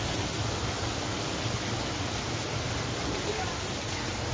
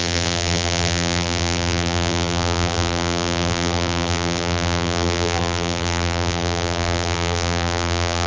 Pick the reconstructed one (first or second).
second